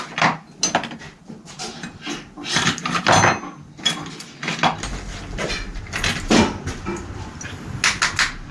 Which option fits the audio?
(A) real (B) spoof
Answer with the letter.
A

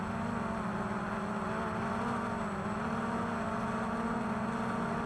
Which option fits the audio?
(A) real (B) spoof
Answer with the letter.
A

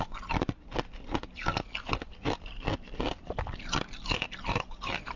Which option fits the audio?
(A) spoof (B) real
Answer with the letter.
B